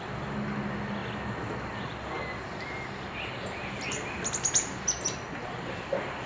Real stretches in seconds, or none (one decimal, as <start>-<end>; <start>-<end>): 0.0-6.3